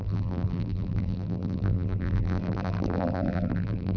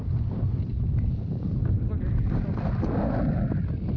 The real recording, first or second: second